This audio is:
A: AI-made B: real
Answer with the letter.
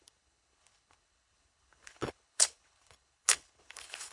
A